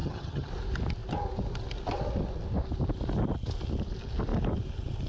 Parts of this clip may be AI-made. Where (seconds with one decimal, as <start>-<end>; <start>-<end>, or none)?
0.0-0.5